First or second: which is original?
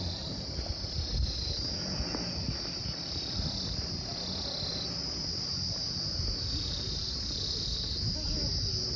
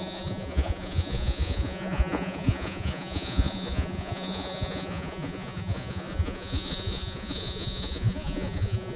first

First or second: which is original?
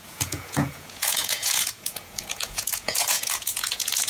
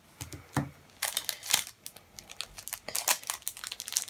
second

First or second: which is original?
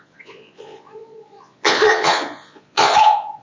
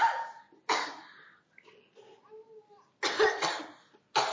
second